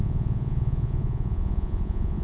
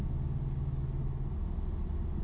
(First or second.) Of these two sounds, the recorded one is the second